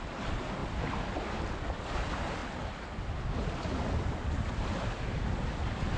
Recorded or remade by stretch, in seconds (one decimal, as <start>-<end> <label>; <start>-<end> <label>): 0.0-6.0 recorded